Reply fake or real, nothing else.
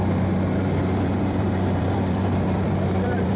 fake